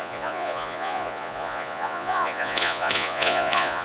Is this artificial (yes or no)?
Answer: yes